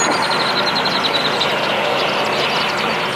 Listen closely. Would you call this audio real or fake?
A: real